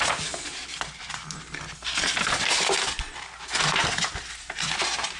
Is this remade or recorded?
recorded